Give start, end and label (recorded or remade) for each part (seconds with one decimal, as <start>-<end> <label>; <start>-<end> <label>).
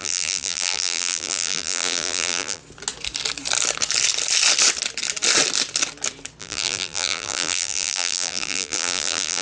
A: 0.0-2.6 remade; 2.6-6.4 recorded; 6.4-9.4 remade